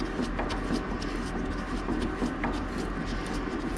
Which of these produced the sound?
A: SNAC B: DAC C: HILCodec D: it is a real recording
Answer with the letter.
D